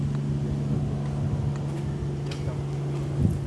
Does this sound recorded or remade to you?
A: recorded